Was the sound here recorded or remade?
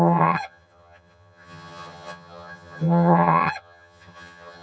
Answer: remade